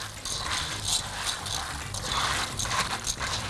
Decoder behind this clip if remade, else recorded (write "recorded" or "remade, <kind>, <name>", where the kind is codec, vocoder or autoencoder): recorded